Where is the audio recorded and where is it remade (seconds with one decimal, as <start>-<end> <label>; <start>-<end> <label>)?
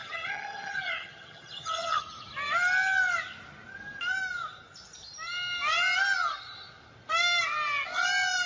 0.0-2.0 remade; 2.0-8.5 recorded